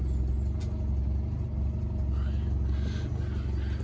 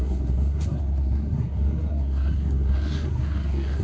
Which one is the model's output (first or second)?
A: second